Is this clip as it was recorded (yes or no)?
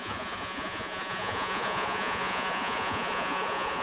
no